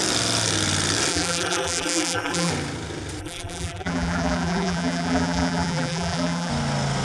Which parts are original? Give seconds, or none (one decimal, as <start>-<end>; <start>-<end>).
0.0-1.1; 2.5-3.2; 6.5-7.0